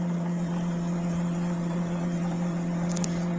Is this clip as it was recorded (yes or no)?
no